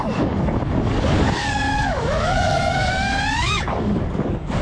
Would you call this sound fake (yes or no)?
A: yes